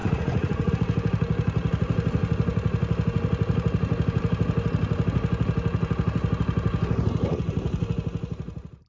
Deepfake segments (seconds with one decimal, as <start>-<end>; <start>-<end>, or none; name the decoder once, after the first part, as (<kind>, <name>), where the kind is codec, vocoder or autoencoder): 0.0-0.7 (vocoder, Vocos)